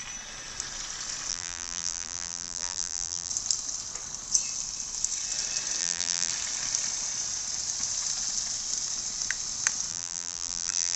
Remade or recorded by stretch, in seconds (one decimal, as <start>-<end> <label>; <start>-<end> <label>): 0.0-1.3 recorded; 1.3-3.3 remade; 3.3-5.8 recorded; 5.8-6.3 remade; 6.3-9.9 recorded; 9.9-11.0 remade